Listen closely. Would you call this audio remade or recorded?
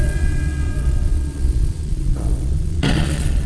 remade